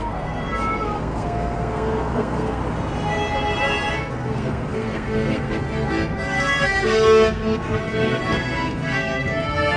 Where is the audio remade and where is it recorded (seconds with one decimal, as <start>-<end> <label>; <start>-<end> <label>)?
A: 0.0-2.6 remade; 2.6-3.9 recorded; 3.9-9.8 remade